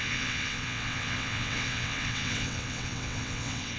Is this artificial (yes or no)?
yes